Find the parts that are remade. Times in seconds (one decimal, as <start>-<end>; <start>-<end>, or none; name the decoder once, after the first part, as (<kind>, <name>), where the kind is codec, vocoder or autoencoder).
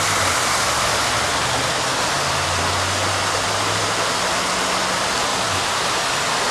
none